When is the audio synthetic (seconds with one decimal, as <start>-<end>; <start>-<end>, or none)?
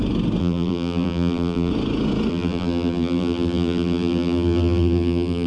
0.4-1.7; 2.3-5.5